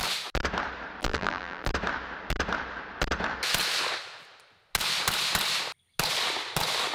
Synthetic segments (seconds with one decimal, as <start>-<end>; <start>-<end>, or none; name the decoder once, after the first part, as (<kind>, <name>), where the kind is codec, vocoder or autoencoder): 1.0-1.7 (vocoder, BigVGAN v2)